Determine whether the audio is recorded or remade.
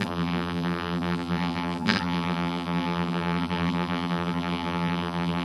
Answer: remade